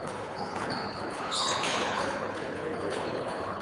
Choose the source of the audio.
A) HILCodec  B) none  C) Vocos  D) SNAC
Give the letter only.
A